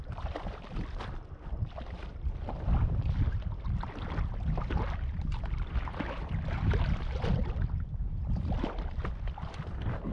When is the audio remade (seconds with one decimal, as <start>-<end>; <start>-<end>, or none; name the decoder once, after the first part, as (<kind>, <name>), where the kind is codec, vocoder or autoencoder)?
0.0-10.1 (vocoder, BigVGAN v2)